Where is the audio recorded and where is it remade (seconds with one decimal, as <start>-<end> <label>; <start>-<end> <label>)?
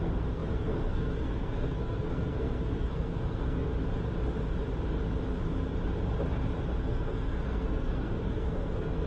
0.0-3.7 remade; 3.7-6.8 recorded; 6.8-9.1 remade